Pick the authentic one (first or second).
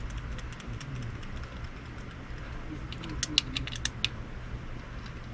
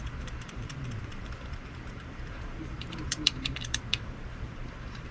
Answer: first